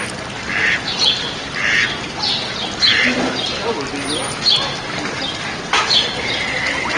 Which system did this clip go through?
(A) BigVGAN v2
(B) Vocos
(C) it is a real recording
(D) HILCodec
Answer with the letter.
C